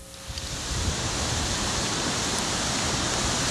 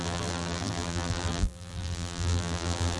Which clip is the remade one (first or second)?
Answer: second